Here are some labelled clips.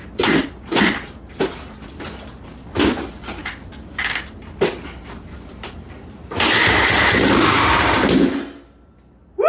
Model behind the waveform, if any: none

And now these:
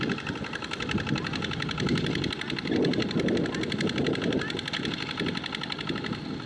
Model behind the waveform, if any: none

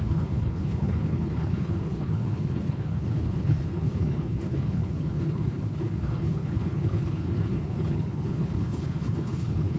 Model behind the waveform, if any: codec, HILCodec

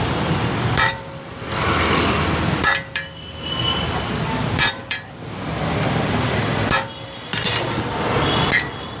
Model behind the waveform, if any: vocoder, BigVGAN v2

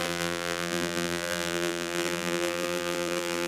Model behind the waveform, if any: vocoder, BigVGAN v2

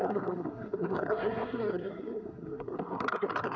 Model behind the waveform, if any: codec, SNAC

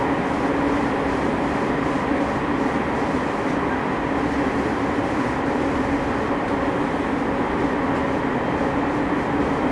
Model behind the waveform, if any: none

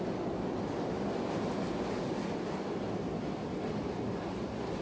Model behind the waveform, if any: none